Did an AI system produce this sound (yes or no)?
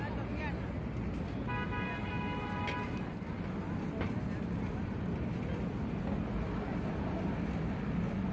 no